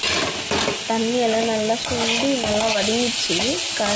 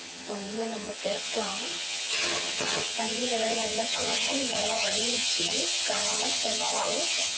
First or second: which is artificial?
second